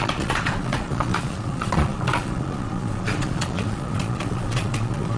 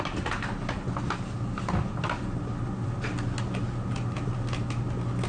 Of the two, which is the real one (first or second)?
second